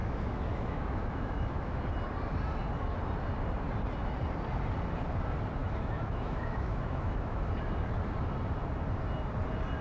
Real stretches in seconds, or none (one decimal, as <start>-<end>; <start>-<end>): 1.8-5.6; 7.4-9.8